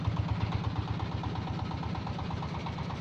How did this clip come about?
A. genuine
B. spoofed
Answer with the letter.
A